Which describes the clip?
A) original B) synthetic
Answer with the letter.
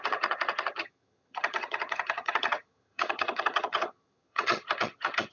B